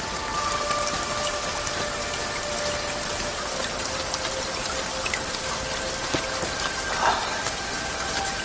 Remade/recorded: remade